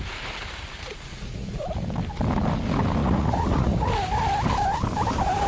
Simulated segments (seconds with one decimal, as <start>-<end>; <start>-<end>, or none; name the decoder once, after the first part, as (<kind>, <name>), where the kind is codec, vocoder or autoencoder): 1.1-1.7 (vocoder, Vocos); 3.0-3.9